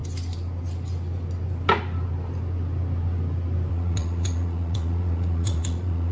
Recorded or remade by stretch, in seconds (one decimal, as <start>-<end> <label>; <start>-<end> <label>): 0.0-3.7 recorded; 3.7-6.1 remade